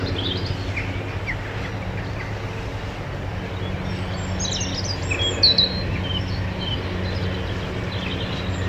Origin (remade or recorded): recorded